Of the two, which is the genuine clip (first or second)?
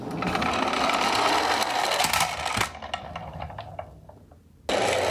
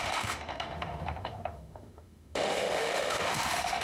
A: first